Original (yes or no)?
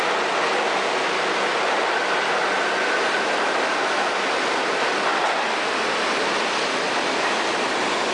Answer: yes